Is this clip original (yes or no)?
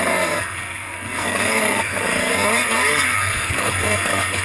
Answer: no